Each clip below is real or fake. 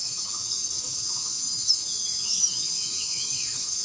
fake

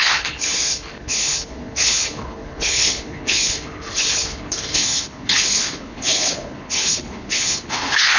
fake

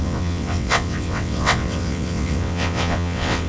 fake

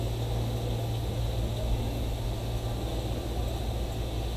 real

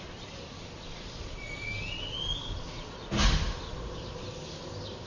real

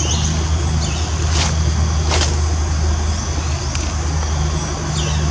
real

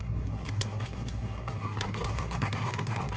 fake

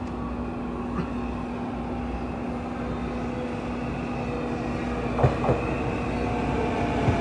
real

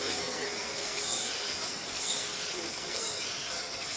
fake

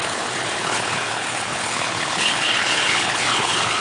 fake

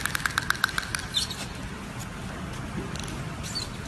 real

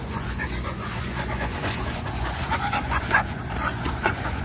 fake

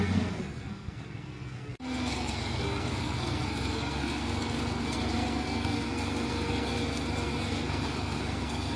fake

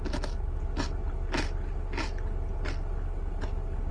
real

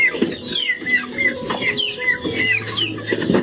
real